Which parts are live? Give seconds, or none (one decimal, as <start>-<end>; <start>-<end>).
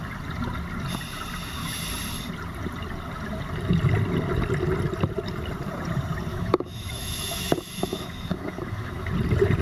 0.0-6.3; 9.1-9.6